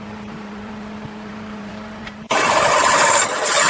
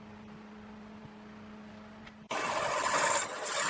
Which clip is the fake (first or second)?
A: first